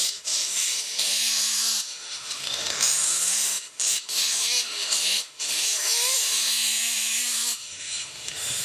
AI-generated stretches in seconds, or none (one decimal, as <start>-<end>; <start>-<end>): 0.0-8.6